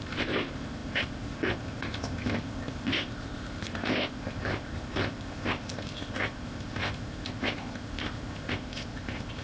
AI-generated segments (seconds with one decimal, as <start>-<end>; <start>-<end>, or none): 0.0-9.4